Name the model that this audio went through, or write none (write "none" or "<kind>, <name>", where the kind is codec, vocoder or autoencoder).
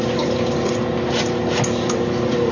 none